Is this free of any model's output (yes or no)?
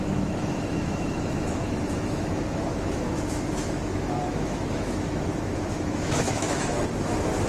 no